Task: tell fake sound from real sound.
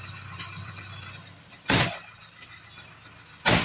real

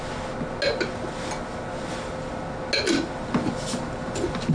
real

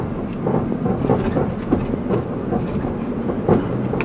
real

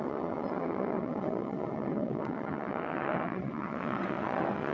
fake